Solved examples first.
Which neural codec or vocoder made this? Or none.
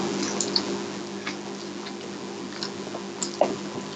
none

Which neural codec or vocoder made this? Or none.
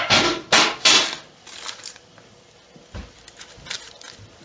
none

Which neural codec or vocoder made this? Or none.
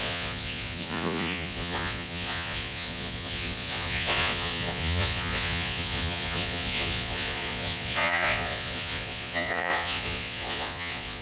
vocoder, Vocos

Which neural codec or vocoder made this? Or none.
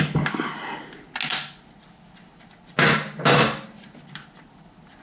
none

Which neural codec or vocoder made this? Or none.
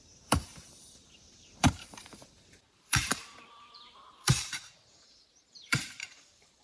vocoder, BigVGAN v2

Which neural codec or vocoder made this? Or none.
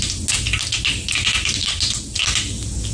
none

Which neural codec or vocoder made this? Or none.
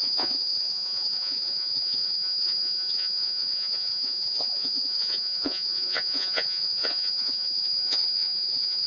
vocoder, Vocos